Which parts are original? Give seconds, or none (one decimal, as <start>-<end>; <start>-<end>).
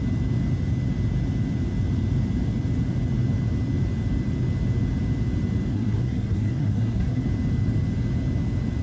0.0-5.7; 7.2-8.8